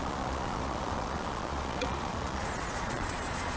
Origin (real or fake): fake